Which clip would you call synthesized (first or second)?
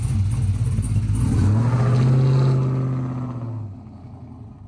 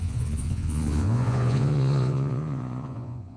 second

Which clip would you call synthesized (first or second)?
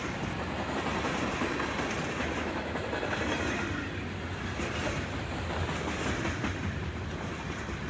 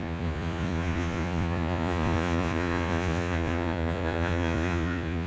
second